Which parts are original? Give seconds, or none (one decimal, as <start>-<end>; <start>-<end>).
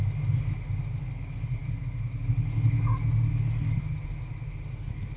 0.0-5.2